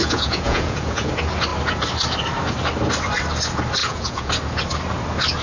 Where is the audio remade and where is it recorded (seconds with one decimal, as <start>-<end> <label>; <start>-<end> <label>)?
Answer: 0.0-1.1 remade; 1.1-3.8 recorded; 3.8-4.3 remade; 4.3-5.4 recorded